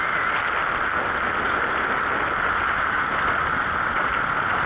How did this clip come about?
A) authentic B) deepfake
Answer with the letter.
A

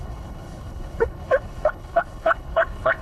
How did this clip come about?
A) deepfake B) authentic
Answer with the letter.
A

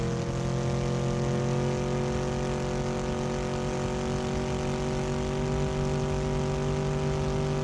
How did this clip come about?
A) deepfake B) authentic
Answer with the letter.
B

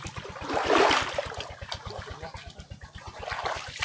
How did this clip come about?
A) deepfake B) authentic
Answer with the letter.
B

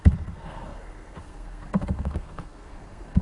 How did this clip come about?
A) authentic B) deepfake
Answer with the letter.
B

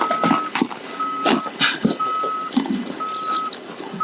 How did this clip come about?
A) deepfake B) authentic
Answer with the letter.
B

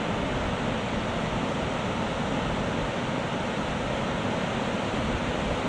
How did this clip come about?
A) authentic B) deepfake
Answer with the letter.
A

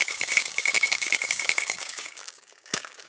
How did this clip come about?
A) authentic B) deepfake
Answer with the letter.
B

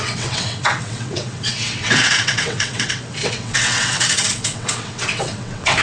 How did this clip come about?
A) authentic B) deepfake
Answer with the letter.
B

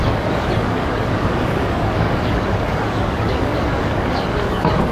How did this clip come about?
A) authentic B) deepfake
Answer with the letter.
B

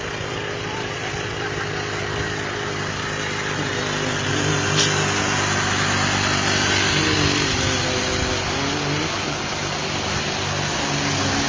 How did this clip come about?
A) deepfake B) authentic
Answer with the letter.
B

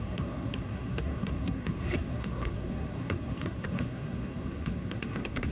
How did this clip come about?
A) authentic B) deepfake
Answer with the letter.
B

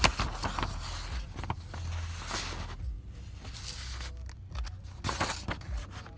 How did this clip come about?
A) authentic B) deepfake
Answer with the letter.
A